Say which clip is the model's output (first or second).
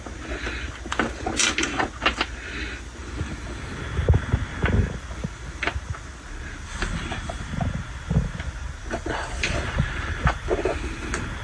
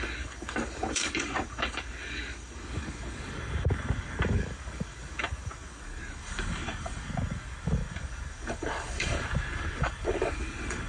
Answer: second